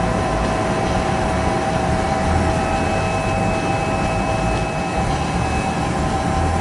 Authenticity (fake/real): real